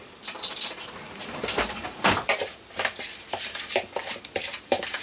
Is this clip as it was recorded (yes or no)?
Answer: no